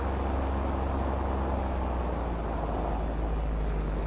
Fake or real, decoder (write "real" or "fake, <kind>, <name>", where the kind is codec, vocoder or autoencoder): real